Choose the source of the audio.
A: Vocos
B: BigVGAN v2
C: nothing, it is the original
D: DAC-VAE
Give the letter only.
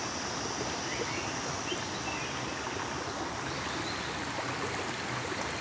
C